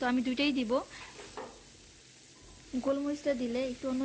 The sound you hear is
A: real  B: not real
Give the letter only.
A